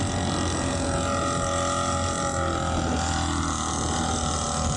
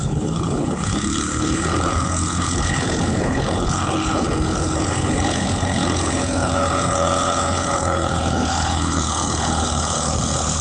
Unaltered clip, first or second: first